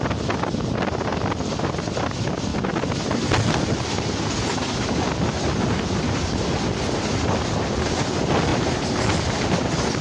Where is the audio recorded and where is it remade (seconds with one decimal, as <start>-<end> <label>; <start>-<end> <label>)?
0.0-8.5 recorded; 8.5-9.0 remade; 9.0-10.0 recorded